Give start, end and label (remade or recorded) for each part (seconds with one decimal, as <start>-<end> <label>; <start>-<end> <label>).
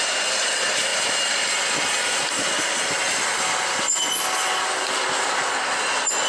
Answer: 0.0-6.3 recorded